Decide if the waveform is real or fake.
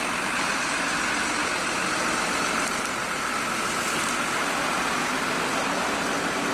real